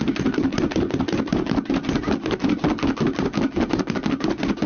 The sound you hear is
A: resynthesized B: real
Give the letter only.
B